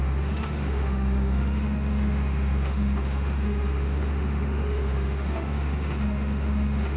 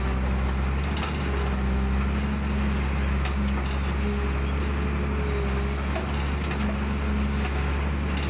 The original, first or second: second